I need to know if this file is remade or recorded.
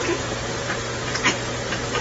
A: remade